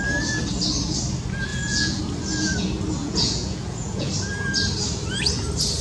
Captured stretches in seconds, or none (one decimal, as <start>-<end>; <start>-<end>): 0.0-1.5; 2.0-3.0; 4.1-5.8